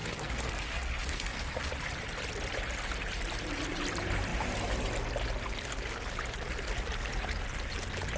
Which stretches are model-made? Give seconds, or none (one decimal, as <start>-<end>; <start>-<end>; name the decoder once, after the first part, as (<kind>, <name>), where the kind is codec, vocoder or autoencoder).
0.0-1.7 (codec, SNAC)

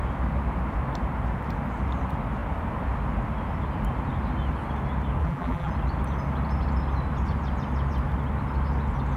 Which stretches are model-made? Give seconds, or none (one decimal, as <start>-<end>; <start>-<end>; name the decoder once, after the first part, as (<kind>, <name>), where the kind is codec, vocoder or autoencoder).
5.2-5.7 (vocoder, BigVGAN v2)

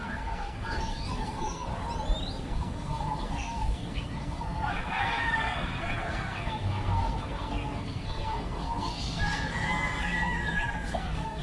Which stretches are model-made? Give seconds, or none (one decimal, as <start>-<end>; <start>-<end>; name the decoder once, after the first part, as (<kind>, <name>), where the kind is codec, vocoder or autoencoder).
0.0-1.7 (codec, SNAC); 2.4-11.4